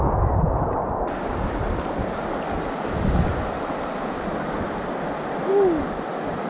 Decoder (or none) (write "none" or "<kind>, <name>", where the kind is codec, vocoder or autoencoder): none